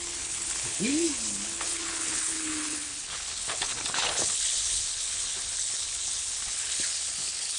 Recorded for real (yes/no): no